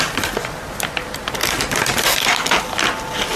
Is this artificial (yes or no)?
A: no